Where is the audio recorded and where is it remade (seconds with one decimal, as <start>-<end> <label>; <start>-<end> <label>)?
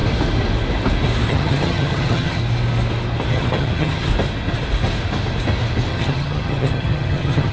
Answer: 0.0-1.3 recorded; 1.3-2.4 remade; 2.4-3.3 recorded; 3.3-4.1 remade; 4.1-5.9 recorded; 5.9-7.5 remade